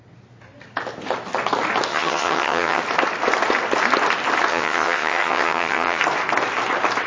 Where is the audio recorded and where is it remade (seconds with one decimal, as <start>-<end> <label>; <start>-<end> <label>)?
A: 0.0-1.9 recorded; 1.9-2.8 remade; 2.8-4.5 recorded; 4.5-6.0 remade; 6.0-7.1 recorded